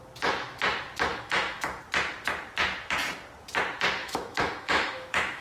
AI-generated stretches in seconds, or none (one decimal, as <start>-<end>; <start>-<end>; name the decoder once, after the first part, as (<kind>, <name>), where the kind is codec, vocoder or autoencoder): 1.1-1.8 (autoencoder, DAC-VAE); 4.0-5.4